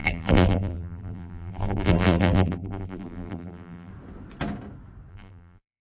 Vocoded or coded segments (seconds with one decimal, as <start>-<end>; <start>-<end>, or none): 0.0-3.9; 5.1-5.8